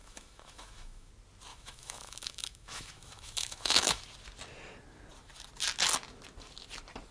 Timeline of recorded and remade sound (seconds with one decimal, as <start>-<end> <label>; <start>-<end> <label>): 0.0-1.1 remade; 1.1-1.5 recorded; 1.5-4.0 remade; 4.0-7.1 recorded